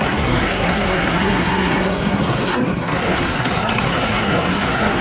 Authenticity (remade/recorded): remade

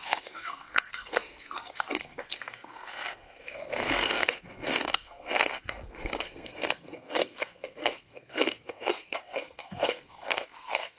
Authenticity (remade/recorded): remade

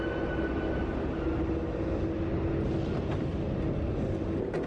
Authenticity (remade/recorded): recorded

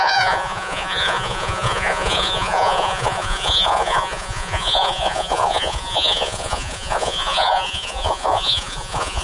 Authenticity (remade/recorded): remade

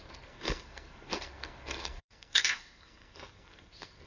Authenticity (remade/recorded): remade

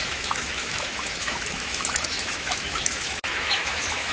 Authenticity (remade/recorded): remade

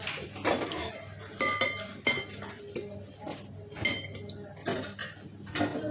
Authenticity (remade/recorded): recorded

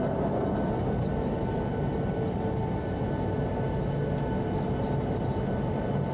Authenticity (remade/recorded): recorded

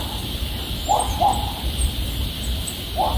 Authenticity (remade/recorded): recorded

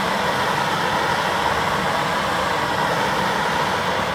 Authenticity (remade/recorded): recorded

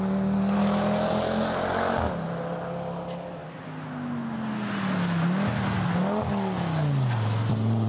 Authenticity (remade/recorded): recorded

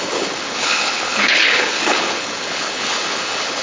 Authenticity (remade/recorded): remade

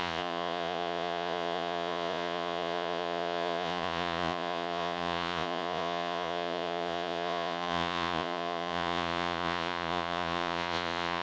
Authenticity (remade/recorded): remade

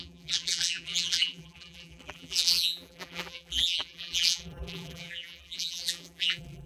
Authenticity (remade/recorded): remade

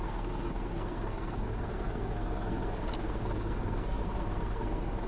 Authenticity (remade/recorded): remade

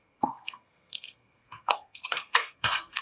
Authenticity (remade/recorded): remade